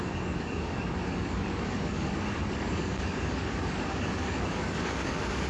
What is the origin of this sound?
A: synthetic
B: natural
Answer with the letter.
A